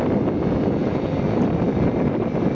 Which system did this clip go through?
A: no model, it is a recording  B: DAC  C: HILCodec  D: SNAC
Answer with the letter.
A